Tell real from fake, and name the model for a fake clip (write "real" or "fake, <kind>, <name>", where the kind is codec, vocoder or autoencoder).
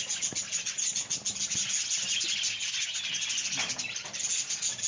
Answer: real